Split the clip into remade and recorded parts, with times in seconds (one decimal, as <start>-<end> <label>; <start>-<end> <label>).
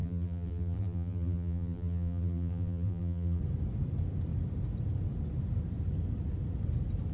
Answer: 0.0-3.4 remade; 3.4-7.1 recorded